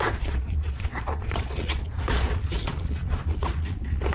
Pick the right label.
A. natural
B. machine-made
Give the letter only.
B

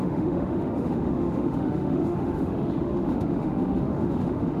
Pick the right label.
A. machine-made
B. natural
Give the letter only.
A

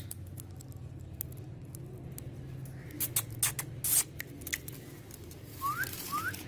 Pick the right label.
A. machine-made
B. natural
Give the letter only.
B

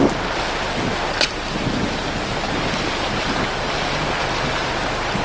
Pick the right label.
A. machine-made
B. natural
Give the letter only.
B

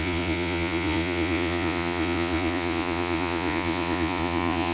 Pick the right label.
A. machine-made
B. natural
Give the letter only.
A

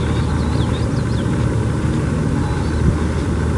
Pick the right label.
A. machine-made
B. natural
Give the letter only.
B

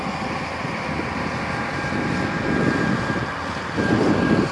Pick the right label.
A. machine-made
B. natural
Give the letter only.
B